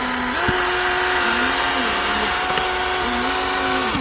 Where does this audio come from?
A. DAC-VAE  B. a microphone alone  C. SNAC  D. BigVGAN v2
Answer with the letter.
B